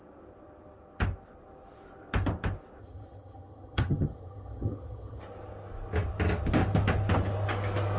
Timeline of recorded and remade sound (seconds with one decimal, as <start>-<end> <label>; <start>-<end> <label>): 0.0-2.8 recorded; 2.8-5.2 remade; 5.2-8.0 recorded

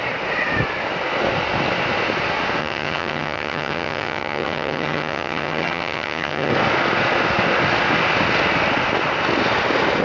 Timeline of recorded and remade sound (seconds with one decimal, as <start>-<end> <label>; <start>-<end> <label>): 0.0-2.6 recorded; 2.6-6.5 remade; 6.5-10.0 recorded

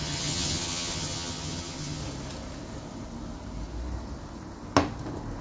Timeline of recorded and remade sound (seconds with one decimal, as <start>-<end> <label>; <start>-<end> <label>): 0.0-2.0 remade; 2.0-5.4 recorded